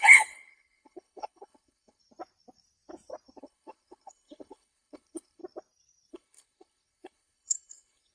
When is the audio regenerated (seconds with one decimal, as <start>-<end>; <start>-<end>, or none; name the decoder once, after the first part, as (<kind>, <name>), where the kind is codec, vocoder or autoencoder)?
0.0-2.0 (codec, HILCodec); 3.4-5.4; 6.1-8.1